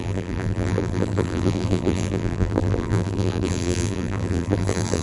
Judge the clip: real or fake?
fake